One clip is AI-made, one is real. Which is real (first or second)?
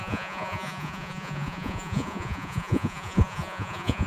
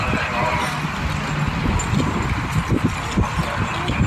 second